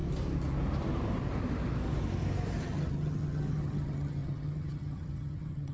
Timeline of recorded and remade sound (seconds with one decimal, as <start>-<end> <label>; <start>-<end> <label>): 0.0-2.6 recorded; 2.6-5.7 remade